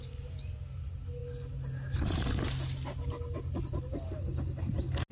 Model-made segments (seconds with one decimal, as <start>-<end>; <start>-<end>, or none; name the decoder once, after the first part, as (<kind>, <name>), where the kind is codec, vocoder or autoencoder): none